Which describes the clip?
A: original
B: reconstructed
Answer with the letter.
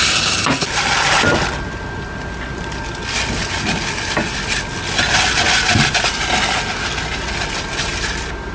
A